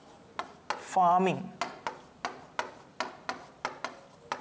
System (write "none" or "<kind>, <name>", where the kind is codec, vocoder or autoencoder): none